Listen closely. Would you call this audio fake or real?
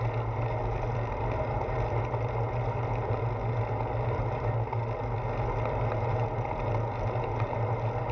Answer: real